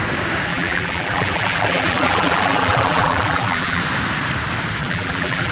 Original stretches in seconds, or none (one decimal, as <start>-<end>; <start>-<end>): 0.0-0.5; 3.8-4.8